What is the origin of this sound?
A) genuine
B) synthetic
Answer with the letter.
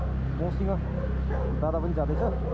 A